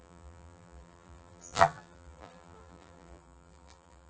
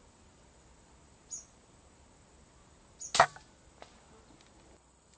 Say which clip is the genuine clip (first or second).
second